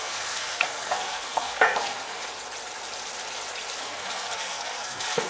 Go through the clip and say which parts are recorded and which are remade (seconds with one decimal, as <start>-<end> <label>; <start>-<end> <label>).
0.0-2.2 remade; 2.2-3.8 recorded; 3.8-5.3 remade